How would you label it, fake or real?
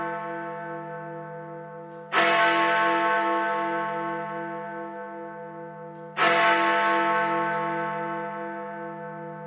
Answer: real